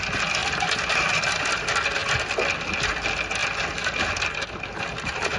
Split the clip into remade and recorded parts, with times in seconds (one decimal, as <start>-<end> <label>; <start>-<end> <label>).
0.0-5.4 recorded

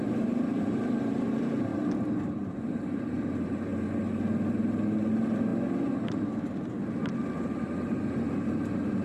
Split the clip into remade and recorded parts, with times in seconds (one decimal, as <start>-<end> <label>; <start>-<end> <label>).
0.0-1.7 remade; 1.7-2.3 recorded; 2.3-3.7 remade; 3.7-5.1 recorded; 5.1-5.5 remade; 5.5-7.8 recorded; 7.8-9.0 remade

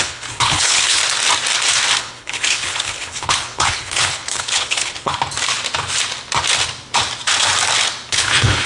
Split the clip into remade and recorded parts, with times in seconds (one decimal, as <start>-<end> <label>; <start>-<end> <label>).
0.0-1.0 remade; 1.0-2.0 recorded; 2.0-5.1 remade; 5.1-8.1 recorded; 8.1-8.7 remade

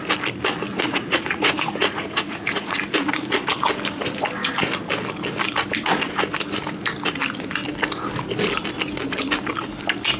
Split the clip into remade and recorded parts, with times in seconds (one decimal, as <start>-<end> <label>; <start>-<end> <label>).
0.0-0.7 recorded; 0.7-2.8 remade; 2.8-10.2 recorded

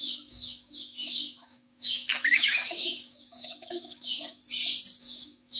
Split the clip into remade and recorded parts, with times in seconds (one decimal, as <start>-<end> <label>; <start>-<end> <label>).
0.0-4.4 remade; 4.4-5.0 recorded; 5.0-5.6 remade